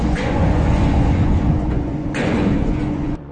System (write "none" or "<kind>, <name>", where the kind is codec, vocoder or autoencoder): vocoder, Vocos